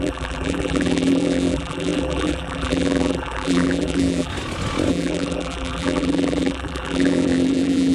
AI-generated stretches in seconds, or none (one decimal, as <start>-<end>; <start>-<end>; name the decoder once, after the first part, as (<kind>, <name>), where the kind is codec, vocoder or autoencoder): 0.0-4.3 (vocoder, BigVGAN v2); 4.9-7.9